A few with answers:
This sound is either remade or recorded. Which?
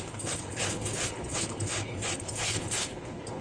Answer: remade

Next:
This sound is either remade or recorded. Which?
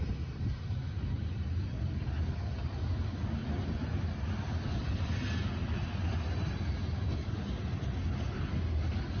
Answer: recorded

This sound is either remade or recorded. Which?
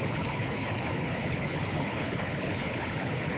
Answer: remade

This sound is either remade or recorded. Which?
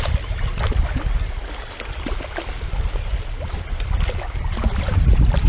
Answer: recorded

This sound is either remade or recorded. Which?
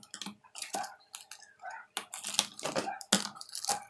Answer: recorded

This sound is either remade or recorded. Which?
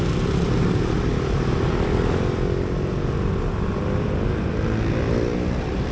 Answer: recorded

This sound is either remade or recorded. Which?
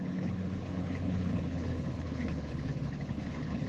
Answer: remade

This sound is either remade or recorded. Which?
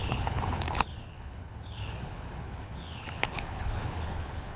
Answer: remade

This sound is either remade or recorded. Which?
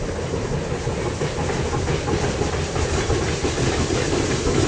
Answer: recorded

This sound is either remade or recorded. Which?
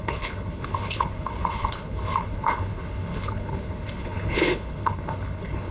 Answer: remade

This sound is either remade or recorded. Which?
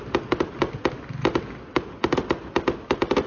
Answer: recorded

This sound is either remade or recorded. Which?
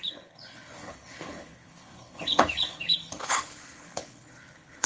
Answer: remade